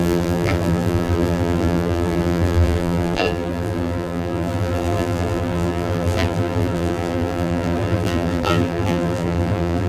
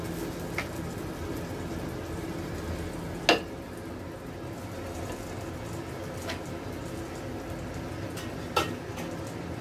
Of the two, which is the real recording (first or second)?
second